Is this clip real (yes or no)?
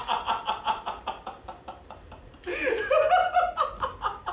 no